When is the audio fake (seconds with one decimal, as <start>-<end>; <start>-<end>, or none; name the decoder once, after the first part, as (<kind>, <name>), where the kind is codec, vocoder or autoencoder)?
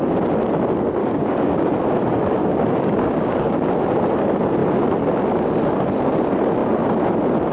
1.0-1.7 (codec, DAC); 2.4-3.7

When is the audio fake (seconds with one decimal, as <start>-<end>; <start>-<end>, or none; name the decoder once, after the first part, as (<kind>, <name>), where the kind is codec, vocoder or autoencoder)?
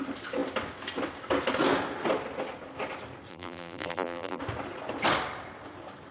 3.3-4.4 (vocoder, BigVGAN v2)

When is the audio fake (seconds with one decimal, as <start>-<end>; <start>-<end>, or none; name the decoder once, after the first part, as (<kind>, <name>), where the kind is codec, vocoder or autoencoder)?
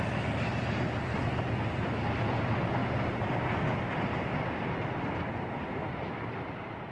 none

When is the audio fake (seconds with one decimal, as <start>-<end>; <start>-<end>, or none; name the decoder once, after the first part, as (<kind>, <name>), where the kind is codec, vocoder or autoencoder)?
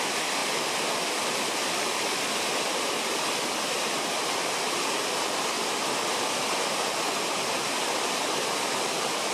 none